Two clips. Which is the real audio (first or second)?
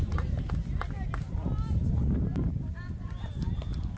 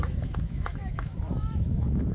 first